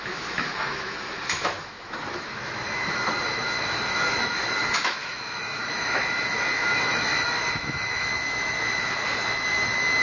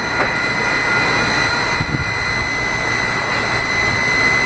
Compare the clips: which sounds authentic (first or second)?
second